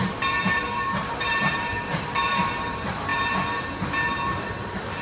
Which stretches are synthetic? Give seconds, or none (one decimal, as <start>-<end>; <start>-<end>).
0.0-5.0